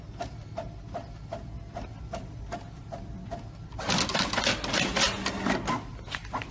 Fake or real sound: real